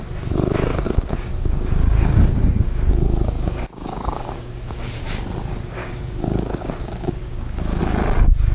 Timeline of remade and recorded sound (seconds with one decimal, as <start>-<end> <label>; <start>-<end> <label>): 0.0-0.7 recorded; 0.7-5.2 remade; 5.2-5.8 recorded; 5.8-7.8 remade; 7.8-8.5 recorded